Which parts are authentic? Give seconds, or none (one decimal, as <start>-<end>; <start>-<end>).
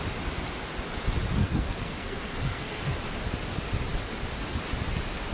0.0-1.4; 2.8-5.3